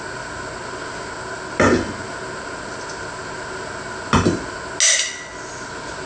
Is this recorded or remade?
recorded